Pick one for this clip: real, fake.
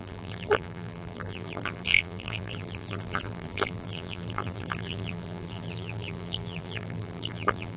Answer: fake